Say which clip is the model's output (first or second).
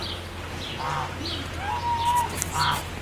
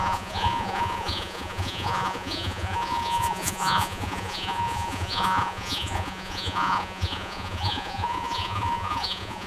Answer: second